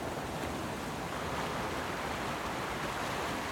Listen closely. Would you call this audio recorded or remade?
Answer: recorded